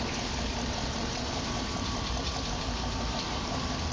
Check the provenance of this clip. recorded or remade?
remade